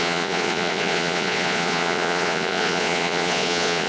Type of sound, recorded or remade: remade